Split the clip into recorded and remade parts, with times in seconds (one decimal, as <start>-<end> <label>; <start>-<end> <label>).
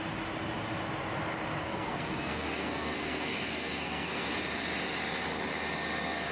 0.0-1.6 recorded; 1.6-4.3 remade; 4.3-6.3 recorded